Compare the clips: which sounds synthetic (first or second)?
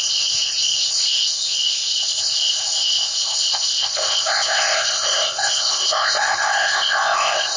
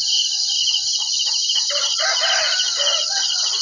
first